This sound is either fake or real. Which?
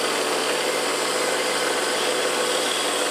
real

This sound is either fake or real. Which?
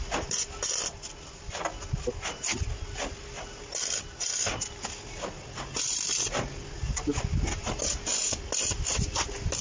real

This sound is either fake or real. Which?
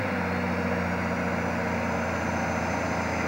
real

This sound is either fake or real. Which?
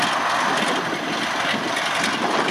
real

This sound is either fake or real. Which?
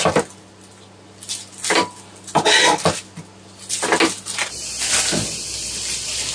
real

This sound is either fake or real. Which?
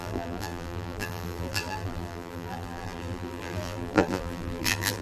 fake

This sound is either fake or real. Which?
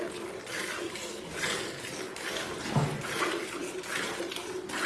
real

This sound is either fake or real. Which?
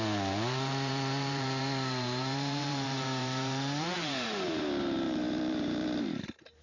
fake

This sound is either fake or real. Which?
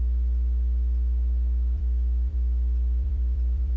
fake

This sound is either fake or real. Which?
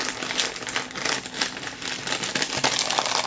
real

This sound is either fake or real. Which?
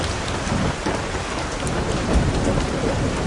real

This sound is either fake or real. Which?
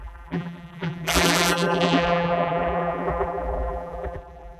fake